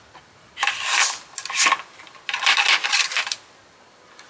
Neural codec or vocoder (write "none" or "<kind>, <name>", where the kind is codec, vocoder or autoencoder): none